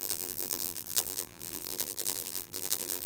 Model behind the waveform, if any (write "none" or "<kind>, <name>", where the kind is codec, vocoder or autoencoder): vocoder, BigVGAN v2